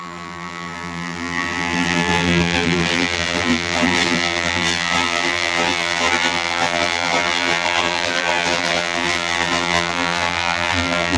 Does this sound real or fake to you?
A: fake